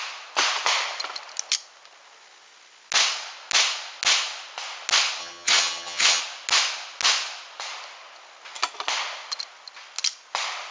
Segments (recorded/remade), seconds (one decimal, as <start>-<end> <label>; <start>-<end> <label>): 0.0-5.2 recorded; 5.2-6.2 remade; 6.2-10.7 recorded